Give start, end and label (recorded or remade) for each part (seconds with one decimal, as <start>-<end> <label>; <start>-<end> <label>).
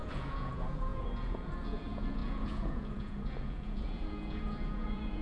0.0-5.2 remade